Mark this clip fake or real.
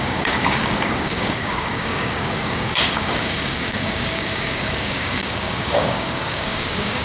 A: fake